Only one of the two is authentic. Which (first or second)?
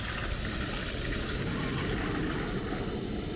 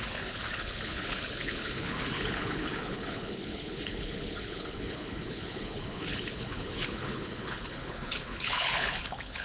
first